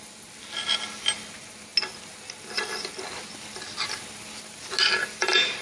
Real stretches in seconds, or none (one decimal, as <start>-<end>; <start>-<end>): 0.0-5.6